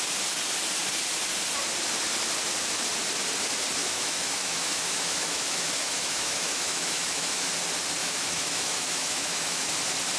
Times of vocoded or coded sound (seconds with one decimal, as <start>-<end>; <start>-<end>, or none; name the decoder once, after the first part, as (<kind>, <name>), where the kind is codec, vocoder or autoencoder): 3.8-7.5 (autoencoder, DAC-VAE); 8.0-9.7